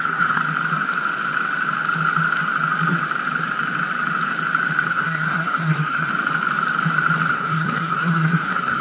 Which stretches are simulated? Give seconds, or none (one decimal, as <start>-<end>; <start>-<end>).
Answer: 0.0-0.4; 4.9-6.1; 7.3-8.8